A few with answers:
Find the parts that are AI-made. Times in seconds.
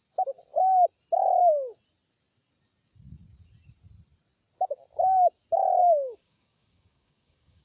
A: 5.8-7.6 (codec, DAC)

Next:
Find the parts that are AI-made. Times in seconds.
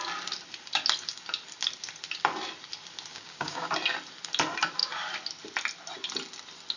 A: 3.1-3.7 (codec, DAC)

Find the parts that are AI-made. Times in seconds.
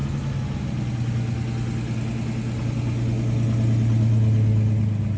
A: none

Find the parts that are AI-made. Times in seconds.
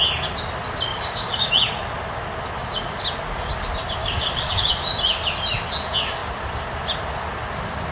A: 0.9-1.5 (codec, DAC); 4.0-4.7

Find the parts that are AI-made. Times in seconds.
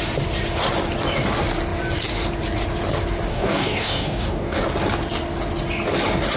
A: 3.3-4.6 (codec, DAC)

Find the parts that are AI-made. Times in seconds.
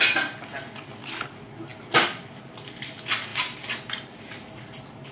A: none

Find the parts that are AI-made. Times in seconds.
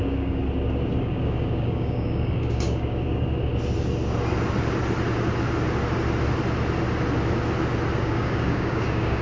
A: 0.0-0.4 (codec, DAC); 1.0-3.5; 8.0-9.2